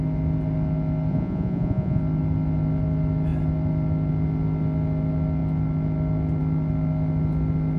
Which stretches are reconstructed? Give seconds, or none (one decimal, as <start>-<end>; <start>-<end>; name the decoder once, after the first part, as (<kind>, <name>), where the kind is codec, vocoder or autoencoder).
1.1-2.0 (vocoder, Vocos)